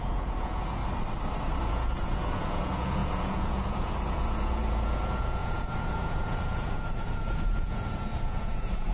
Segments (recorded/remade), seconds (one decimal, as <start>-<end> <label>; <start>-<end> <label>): 0.0-0.8 remade; 0.8-1.6 recorded; 1.6-8.9 remade